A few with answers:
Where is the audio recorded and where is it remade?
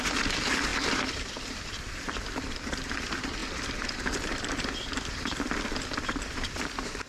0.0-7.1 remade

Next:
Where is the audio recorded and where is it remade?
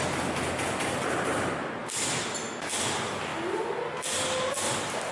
0.0-5.1 recorded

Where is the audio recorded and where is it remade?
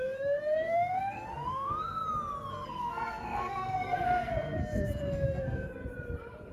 0.0-2.0 remade; 2.0-2.5 recorded; 2.5-5.8 remade; 5.8-6.5 recorded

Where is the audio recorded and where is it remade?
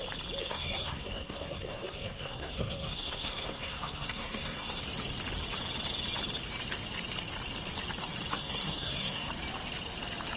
0.0-0.4 recorded; 0.4-4.8 remade; 4.8-8.3 recorded; 8.3-9.3 remade; 9.3-10.4 recorded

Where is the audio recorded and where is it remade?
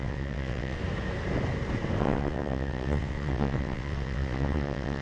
0.0-0.8 remade; 0.8-2.0 recorded; 2.0-5.0 remade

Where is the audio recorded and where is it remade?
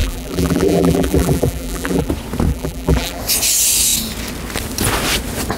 0.0-2.1 remade; 2.1-2.5 recorded; 2.5-3.2 remade; 3.2-5.6 recorded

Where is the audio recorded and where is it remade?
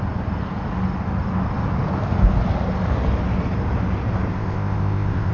0.0-4.3 recorded; 4.3-5.3 remade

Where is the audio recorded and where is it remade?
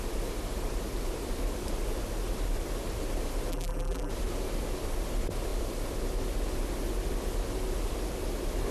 0.0-3.5 recorded; 3.5-4.1 remade; 4.1-8.7 recorded